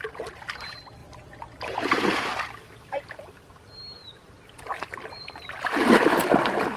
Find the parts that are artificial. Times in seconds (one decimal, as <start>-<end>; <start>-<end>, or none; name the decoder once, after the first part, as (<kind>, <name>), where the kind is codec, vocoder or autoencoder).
1.0-1.8 (vocoder, BigVGAN v2)